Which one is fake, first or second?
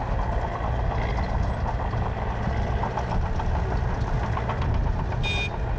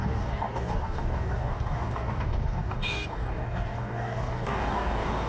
second